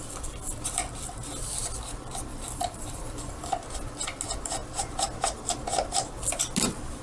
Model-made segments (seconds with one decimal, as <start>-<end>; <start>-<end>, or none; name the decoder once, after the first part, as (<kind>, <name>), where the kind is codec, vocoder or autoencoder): 2.3-3.5 (vocoder, BigVGAN v2)